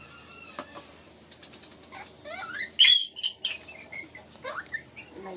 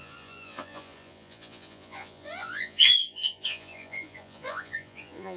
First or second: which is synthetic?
second